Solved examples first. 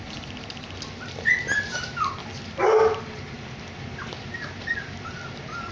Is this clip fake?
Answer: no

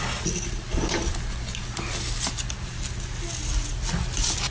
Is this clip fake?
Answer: no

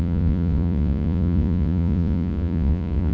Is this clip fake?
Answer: yes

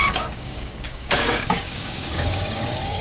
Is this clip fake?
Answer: yes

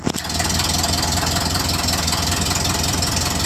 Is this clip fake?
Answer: no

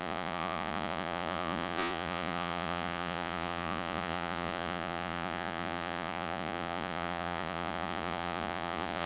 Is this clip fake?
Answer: yes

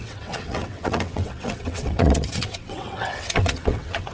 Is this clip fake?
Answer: yes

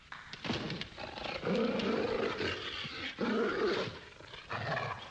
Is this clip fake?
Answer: no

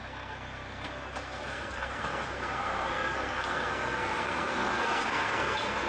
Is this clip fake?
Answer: yes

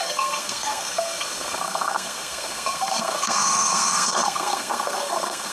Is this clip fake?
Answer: yes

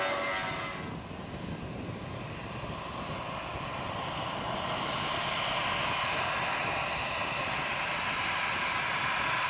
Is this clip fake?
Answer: no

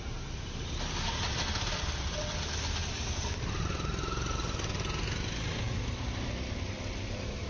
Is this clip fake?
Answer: no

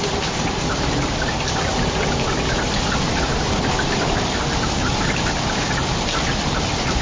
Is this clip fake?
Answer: no